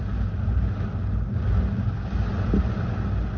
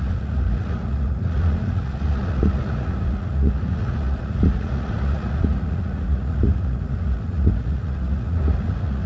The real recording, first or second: first